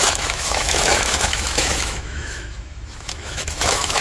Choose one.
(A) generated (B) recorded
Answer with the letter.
A